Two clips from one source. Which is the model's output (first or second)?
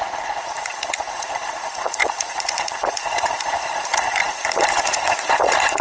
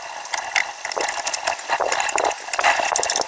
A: first